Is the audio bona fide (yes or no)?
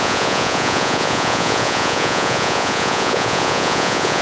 no